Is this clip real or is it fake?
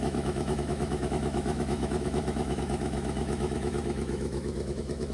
fake